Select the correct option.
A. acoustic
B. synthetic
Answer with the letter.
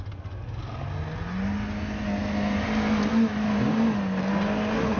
A